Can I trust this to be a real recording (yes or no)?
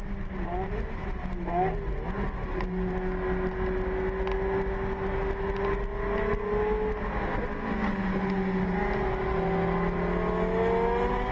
yes